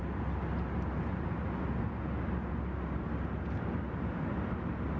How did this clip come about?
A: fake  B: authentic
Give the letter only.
B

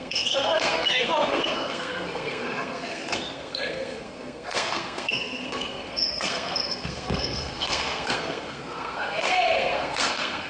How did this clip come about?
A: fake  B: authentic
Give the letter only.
A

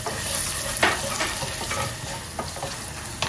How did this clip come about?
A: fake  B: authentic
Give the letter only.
B